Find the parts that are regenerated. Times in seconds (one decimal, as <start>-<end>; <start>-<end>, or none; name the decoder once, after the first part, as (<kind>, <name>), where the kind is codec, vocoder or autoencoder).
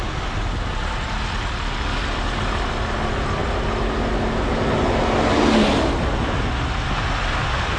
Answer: none